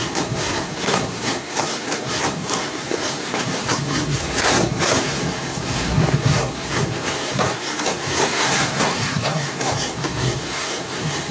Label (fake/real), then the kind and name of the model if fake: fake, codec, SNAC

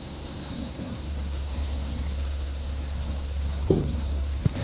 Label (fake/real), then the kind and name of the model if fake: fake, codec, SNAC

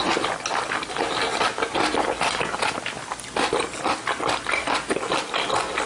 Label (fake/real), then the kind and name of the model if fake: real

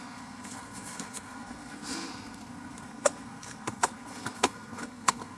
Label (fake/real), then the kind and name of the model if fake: fake, codec, SNAC